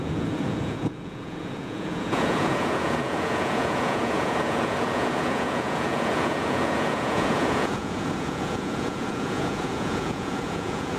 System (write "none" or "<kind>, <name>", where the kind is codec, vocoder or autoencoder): vocoder, Vocos